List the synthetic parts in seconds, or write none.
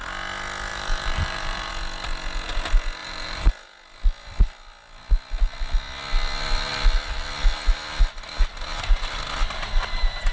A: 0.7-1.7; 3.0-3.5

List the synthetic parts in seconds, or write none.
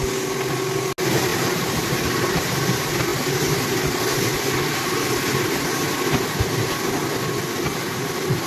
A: 1.3-2.4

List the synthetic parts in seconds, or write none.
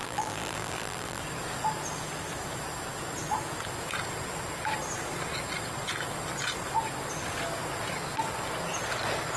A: 0.0-1.2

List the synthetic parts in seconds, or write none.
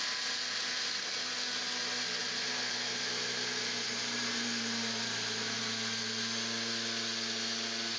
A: 2.2-5.6